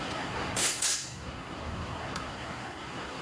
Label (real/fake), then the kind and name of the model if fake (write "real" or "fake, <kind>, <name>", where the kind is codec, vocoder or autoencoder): fake, codec, SNAC